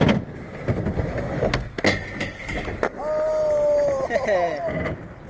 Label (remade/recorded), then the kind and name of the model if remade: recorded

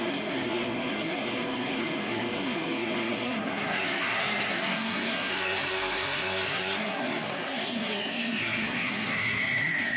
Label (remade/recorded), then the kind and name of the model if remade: remade, codec, SNAC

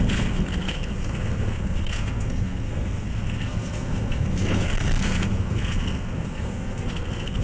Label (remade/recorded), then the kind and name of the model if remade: remade, codec, SNAC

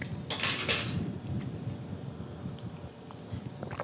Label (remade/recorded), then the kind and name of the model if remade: recorded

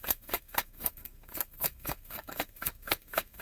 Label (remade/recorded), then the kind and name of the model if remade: remade, codec, SNAC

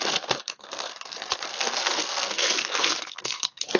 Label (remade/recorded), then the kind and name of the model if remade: remade, codec, SNAC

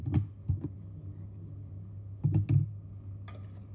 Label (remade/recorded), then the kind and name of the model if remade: recorded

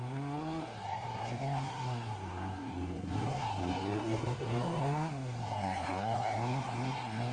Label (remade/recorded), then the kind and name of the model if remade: remade, codec, SNAC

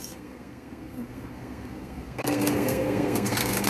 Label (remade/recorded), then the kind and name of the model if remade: remade, codec, SNAC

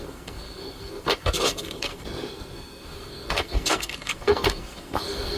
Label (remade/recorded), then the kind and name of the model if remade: remade, codec, SNAC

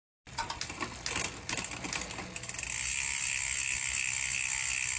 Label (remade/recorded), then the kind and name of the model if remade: recorded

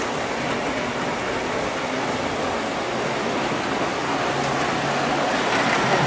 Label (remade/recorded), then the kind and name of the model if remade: recorded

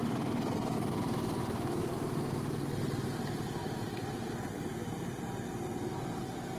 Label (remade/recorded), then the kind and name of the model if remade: recorded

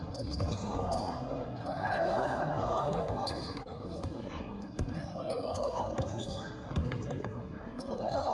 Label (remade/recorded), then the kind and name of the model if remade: remade, codec, SNAC